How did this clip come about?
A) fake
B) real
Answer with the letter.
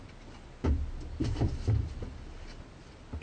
B